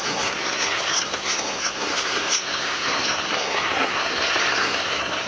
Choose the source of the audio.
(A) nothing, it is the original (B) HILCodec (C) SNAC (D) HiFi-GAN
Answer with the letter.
C